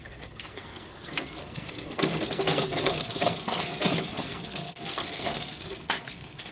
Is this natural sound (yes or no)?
no